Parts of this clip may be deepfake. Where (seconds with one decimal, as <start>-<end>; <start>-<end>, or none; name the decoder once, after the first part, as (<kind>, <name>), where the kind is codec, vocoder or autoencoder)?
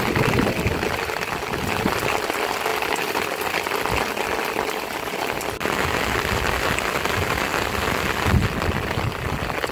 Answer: none